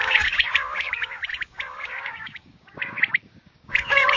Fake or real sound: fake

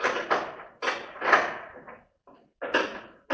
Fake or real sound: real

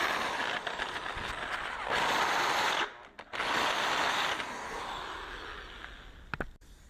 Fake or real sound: real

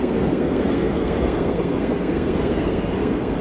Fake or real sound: fake